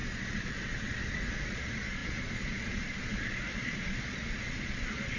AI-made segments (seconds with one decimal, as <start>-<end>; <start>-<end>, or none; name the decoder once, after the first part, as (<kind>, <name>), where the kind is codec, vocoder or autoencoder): 0.0-5.2 (vocoder, Vocos)